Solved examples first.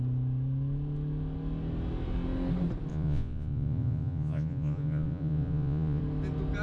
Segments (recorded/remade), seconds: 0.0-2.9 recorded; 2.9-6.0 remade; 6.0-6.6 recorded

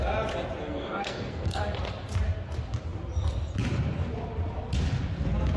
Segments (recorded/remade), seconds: 0.0-0.6 recorded; 0.6-1.6 remade; 1.6-5.6 recorded

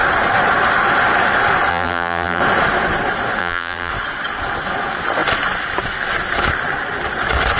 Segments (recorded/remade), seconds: 0.0-1.7 recorded; 1.7-2.4 remade; 2.4-3.4 recorded; 3.4-3.9 remade; 3.9-7.6 recorded

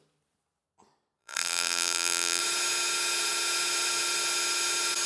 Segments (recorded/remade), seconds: 0.0-1.2 recorded; 1.2-2.4 remade; 2.4-5.1 recorded